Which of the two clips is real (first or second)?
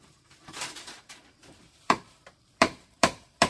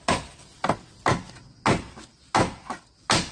second